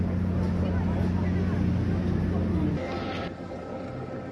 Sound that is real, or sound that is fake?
real